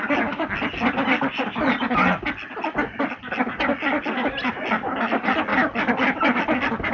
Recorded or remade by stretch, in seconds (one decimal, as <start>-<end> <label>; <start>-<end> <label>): 0.0-6.9 recorded